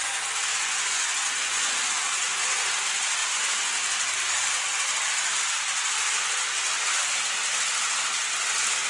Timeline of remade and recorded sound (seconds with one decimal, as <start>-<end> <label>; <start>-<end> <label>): 0.0-0.5 recorded; 0.5-1.9 remade; 1.9-3.2 recorded; 3.2-3.7 remade; 3.7-8.9 recorded